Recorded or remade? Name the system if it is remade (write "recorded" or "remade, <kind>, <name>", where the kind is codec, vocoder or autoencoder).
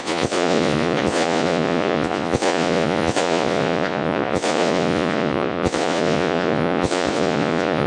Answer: remade, vocoder, Vocos